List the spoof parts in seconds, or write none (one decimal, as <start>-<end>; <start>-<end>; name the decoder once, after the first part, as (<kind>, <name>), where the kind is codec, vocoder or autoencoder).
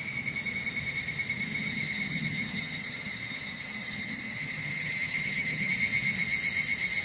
1.5-5.7 (vocoder, HiFi-GAN)